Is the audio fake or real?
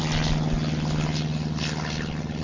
real